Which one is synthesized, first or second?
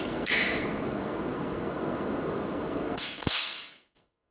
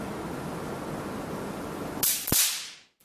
first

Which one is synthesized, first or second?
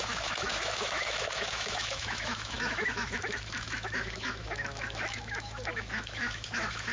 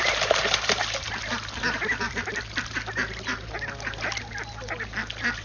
first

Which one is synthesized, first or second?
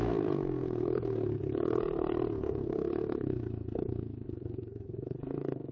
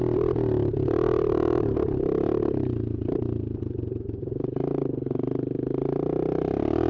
first